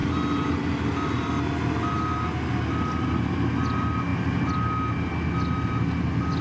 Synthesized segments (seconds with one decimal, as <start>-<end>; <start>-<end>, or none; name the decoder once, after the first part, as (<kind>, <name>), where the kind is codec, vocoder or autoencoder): none